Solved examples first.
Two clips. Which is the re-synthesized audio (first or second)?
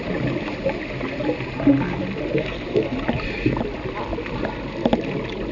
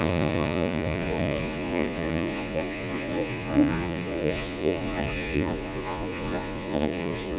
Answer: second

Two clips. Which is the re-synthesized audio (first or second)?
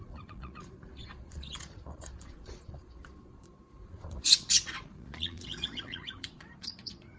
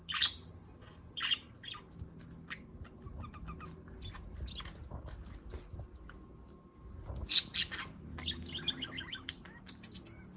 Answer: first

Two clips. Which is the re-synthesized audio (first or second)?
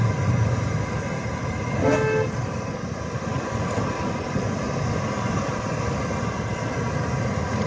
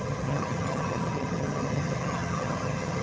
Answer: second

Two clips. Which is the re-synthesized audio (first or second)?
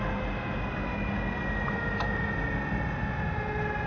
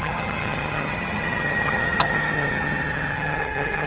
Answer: second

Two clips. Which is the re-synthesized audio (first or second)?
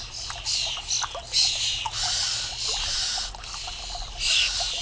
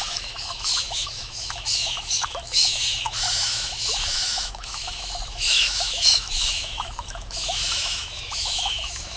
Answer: second